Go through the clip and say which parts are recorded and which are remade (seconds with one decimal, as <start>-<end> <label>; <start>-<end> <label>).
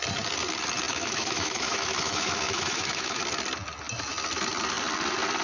0.0-0.9 recorded; 0.9-3.2 remade; 3.2-5.4 recorded